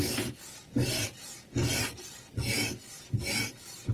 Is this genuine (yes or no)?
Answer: yes